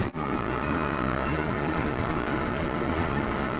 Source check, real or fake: fake